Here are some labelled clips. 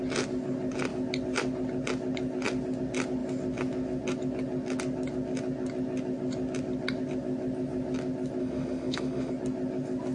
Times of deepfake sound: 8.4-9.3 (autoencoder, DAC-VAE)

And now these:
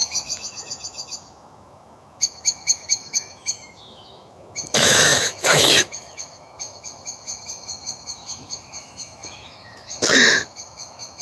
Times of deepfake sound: 0.0-11.2 (autoencoder, DAC-VAE)

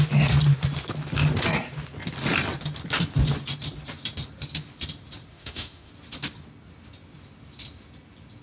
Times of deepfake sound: 5.3-5.9 (autoencoder, DAC-VAE)

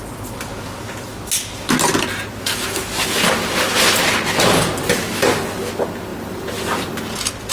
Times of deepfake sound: none